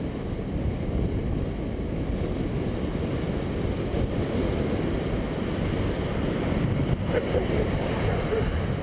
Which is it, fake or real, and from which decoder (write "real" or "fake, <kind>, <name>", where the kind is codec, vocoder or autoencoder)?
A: real